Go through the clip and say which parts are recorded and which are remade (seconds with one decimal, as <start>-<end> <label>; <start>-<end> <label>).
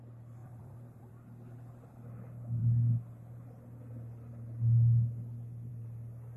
0.0-0.4 recorded; 0.4-1.1 remade; 1.1-6.4 recorded